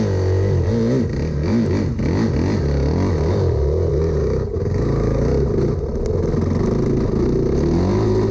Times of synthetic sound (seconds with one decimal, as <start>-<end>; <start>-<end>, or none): 4.2-5.2